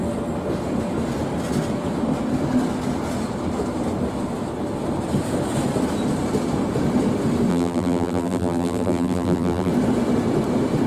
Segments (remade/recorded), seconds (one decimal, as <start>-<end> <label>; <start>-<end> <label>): 0.0-7.5 recorded; 7.5-9.7 remade; 9.7-10.9 recorded